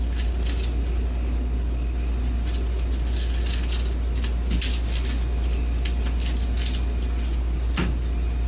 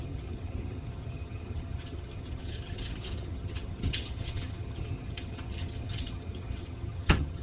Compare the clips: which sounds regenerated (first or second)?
second